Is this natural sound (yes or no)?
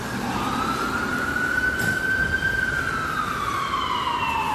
yes